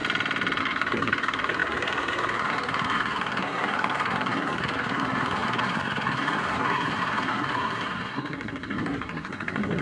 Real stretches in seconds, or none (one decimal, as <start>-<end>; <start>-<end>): 0.0-0.6

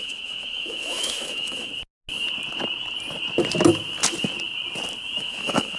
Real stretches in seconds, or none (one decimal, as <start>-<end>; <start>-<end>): 1.7-5.2

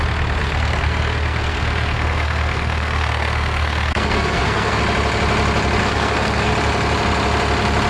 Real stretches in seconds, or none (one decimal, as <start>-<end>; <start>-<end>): 0.0-0.4; 4.8-5.8; 6.5-7.9